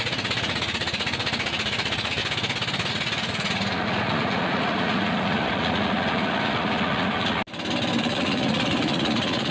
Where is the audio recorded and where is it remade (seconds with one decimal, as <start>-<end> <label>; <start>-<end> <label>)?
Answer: 0.0-2.2 remade; 2.2-2.9 recorded; 2.9-7.4 remade; 7.4-8.0 recorded; 8.0-9.5 remade